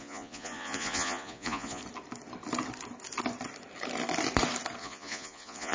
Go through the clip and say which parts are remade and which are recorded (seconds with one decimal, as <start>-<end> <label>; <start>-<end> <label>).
0.0-1.8 remade; 1.8-4.8 recorded; 4.8-5.7 remade